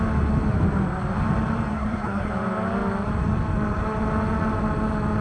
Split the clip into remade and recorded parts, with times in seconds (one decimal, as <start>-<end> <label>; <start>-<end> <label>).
0.0-1.7 recorded; 1.7-2.3 remade; 2.3-5.2 recorded